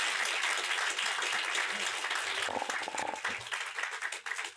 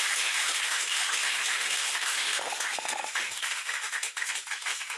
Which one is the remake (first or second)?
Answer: second